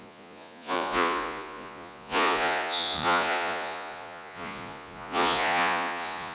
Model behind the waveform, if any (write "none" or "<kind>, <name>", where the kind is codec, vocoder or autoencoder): vocoder, Vocos